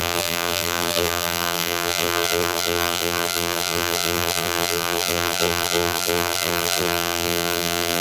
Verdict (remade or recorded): remade